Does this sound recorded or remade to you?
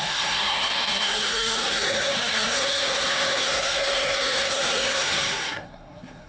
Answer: remade